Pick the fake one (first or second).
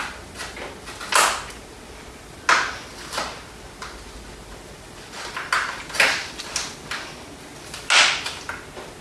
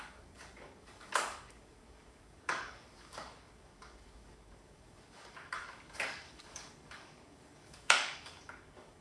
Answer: second